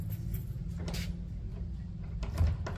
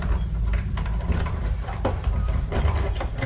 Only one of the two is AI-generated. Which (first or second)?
second